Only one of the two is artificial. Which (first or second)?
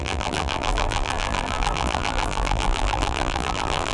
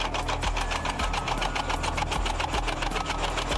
first